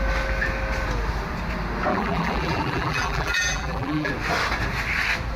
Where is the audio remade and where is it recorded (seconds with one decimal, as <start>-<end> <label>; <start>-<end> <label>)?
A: 0.0-1.9 recorded; 1.9-4.1 remade; 4.1-5.4 recorded